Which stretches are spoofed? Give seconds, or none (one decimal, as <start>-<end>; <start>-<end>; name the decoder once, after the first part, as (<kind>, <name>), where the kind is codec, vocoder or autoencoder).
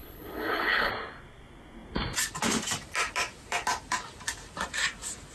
0.0-0.9 (codec, HILCodec)